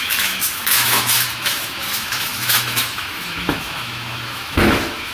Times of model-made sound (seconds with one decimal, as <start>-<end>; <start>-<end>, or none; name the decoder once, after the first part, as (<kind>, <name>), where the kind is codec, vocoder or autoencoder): 0.0-5.1 (autoencoder, DAC-VAE)